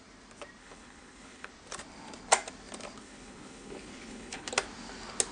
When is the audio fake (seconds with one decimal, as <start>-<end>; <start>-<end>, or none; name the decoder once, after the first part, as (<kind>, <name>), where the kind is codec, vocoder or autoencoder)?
0.6-1.5 (codec, HILCodec); 3.0-4.5